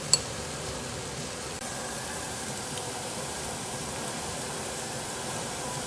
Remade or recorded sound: remade